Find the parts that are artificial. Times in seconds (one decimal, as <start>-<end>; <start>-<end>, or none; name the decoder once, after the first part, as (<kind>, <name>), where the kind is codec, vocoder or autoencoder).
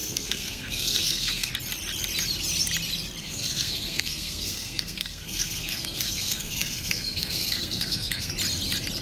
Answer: 0.0-1.5 (codec, SNAC); 3.2-8.3